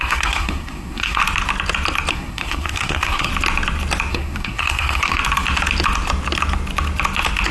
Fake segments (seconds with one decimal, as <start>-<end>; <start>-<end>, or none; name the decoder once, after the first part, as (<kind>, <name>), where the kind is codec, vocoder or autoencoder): 0.0-1.2 (codec, SNAC); 2.1-3.3; 4.1-5.2